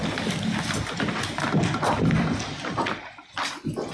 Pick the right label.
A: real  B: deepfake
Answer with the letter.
A